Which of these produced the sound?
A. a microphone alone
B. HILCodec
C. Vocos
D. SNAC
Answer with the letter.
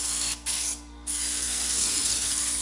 D